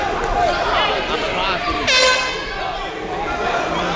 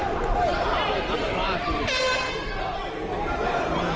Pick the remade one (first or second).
second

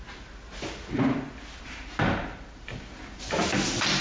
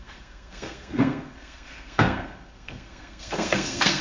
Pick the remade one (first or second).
second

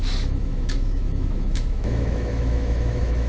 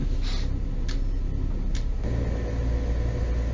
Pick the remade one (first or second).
first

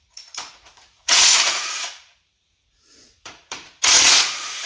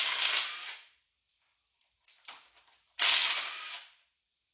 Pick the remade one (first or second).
first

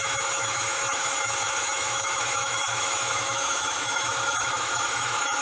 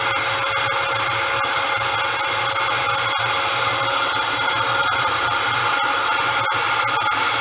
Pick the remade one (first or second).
first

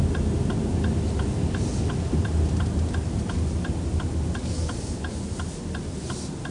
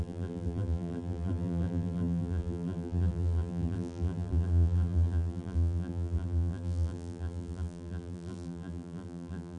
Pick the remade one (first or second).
second